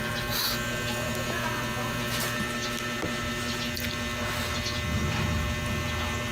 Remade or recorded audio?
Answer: recorded